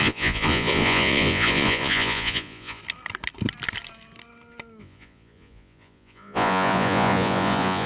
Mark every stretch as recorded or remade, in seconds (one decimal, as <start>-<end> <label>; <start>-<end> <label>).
0.0-2.8 remade; 2.8-4.8 recorded; 4.8-7.9 remade